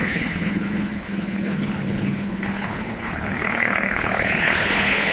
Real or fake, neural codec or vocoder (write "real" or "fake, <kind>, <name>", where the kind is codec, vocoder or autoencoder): fake, codec, HILCodec